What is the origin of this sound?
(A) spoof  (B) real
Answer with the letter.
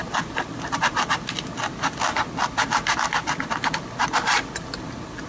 B